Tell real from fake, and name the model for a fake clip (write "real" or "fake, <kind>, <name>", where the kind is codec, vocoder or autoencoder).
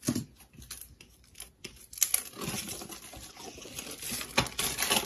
real